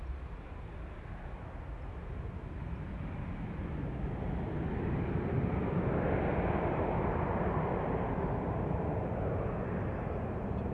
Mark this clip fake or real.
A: real